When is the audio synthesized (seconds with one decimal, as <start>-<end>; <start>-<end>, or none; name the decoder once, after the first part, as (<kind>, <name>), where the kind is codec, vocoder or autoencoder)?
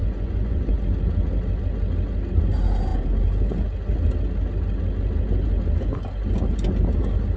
0.0-0.8 (vocoder, Vocos)